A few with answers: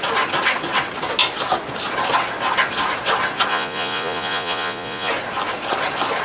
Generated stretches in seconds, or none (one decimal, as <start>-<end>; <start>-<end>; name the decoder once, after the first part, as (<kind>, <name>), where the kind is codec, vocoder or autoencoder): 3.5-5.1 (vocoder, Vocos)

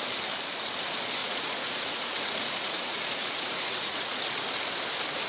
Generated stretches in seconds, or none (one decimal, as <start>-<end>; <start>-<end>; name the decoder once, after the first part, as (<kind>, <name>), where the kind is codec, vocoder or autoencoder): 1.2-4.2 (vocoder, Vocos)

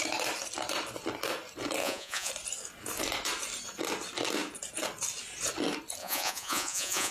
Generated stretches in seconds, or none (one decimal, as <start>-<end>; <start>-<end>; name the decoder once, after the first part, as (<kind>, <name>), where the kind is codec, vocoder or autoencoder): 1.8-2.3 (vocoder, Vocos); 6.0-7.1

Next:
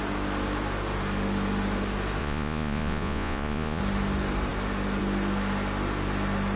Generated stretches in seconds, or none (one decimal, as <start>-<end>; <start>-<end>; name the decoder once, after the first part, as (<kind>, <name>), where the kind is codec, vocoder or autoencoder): 2.2-3.8 (vocoder, Vocos)

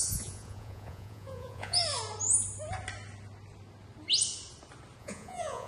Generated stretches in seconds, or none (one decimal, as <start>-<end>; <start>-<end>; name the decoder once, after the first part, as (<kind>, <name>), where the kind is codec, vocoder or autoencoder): 0.0-1.8 (vocoder, Vocos); 5.0-5.7

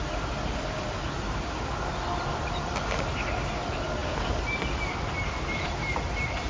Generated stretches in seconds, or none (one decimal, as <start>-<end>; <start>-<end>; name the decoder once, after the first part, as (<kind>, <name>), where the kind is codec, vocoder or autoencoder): none

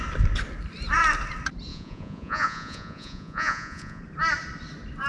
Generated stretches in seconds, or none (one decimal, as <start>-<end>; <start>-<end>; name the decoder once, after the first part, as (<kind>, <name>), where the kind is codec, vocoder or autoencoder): 1.7-4.0 (vocoder, Vocos)